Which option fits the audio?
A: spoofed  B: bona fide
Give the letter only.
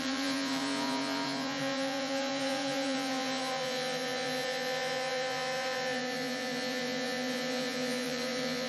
A